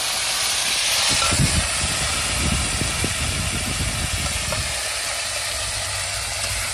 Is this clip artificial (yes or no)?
no